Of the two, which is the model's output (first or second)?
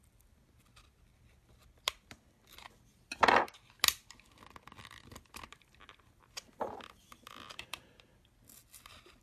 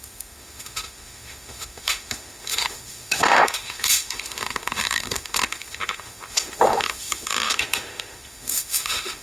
second